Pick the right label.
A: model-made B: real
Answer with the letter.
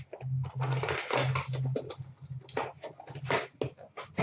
B